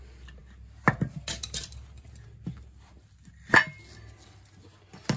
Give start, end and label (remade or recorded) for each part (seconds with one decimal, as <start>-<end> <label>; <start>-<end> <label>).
0.0-5.2 recorded